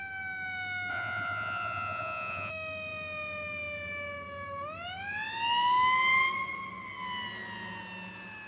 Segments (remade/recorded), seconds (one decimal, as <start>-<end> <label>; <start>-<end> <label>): 0.0-0.9 recorded; 0.9-2.5 remade; 2.5-8.5 recorded